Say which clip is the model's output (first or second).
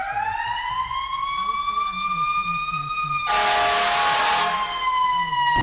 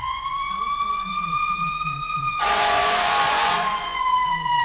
second